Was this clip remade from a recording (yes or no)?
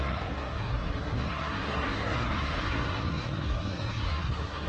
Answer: yes